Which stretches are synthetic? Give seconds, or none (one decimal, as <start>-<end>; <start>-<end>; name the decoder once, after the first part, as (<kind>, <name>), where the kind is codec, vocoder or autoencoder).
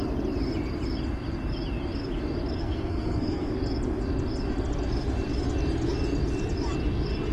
2.6-3.5 (codec, SNAC)